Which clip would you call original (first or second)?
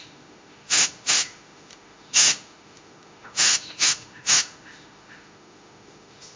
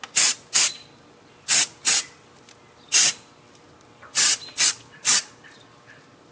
second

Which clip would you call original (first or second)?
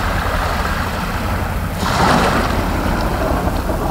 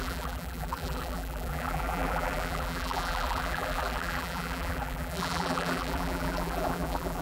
first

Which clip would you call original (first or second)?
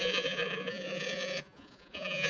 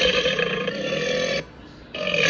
second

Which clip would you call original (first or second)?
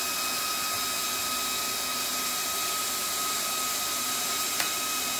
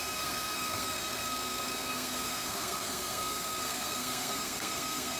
first